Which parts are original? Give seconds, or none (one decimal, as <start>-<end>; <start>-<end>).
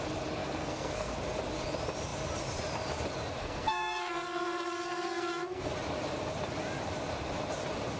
0.0-0.4; 1.1-3.4; 5.7-8.0